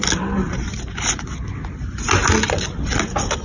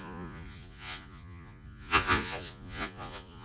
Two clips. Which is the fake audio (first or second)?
second